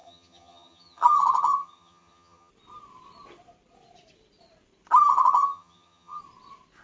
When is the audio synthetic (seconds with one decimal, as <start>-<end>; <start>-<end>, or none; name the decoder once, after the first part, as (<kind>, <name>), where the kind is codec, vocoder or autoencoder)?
0.0-2.5 (vocoder, HiFi-GAN); 5.1-6.2

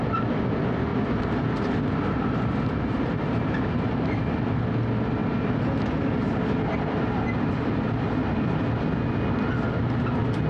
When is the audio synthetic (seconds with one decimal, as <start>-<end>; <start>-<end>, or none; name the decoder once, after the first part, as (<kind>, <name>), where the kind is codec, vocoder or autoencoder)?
0.9-3.9 (vocoder, BigVGAN v2)

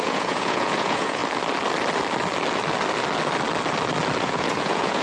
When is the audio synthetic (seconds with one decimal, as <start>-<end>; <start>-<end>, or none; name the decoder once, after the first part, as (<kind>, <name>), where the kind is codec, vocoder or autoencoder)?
0.0-1.2 (vocoder, Vocos); 4.2-5.0

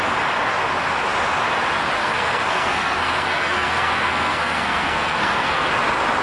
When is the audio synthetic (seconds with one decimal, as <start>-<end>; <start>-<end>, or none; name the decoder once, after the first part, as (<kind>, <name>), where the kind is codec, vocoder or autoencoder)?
2.0-5.7 (codec, SNAC)

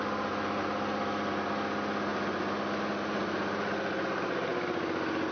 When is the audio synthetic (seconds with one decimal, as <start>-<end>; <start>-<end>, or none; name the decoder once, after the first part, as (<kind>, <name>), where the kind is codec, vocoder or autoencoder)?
none

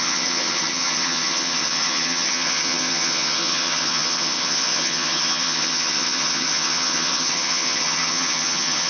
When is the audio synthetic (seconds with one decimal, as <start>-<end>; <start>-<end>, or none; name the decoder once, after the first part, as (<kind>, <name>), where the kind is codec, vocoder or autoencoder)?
0.0-8.9 (vocoder, HiFi-GAN)

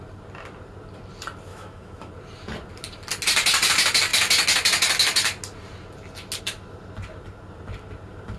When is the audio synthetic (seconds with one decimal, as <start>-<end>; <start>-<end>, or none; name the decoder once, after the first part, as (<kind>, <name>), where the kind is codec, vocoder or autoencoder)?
1.5-2.1 (autoencoder, DAC-VAE)

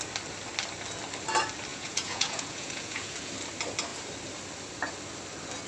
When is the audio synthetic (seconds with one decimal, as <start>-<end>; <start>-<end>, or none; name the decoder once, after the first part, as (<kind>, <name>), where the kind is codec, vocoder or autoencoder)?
1.7-3.3 (vocoder, Vocos)